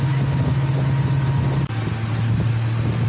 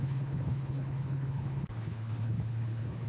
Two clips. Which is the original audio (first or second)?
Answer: first